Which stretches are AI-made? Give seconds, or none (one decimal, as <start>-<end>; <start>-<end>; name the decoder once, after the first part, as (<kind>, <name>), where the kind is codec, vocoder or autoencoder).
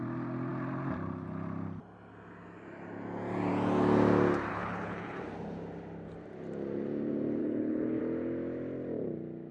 4.5-5.2 (codec, HILCodec); 7.4-8.0